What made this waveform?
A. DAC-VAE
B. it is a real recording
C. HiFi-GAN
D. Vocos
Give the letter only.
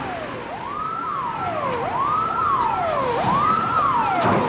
B